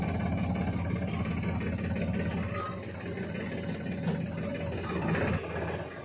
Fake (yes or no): no